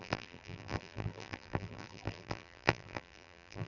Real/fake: fake